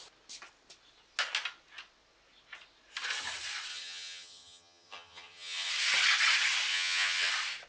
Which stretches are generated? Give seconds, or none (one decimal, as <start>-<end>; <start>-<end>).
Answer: 3.7-5.7; 6.7-7.3